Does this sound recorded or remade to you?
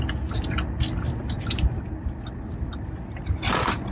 recorded